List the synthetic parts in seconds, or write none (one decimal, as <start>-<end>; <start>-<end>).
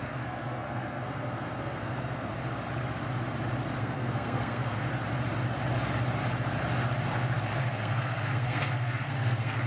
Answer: 0.0-2.3; 3.8-4.9; 7.6-9.7